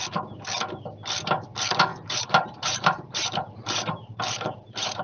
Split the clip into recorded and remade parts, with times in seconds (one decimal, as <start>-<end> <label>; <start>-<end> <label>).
0.0-1.9 recorded; 1.9-5.0 remade

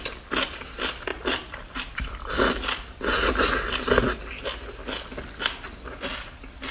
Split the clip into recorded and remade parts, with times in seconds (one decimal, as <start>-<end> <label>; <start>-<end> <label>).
0.0-1.1 recorded; 1.1-3.0 remade; 3.0-6.7 recorded